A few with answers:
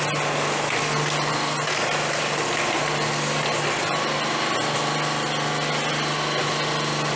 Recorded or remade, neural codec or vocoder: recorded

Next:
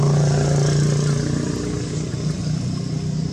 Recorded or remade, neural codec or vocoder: recorded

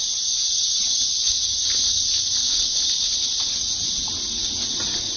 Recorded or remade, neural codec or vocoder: recorded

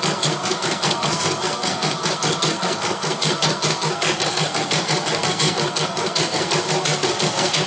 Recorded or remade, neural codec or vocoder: remade, codec, SNAC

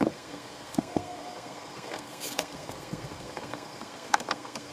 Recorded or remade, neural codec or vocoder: remade, codec, SNAC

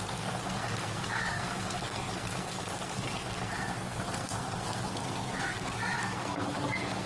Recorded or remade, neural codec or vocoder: remade, codec, SNAC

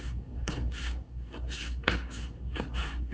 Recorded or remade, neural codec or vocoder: remade, codec, SNAC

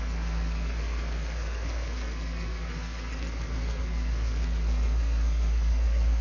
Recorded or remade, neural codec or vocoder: remade, codec, SNAC